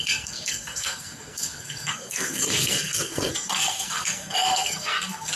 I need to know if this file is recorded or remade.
remade